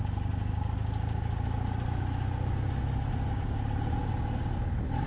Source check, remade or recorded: recorded